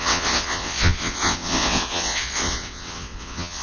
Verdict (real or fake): fake